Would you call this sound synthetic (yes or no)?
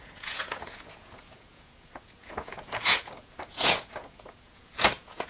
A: yes